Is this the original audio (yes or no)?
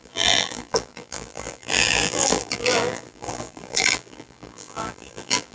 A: no